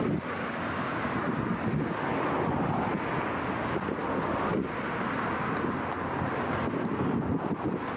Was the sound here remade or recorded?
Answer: recorded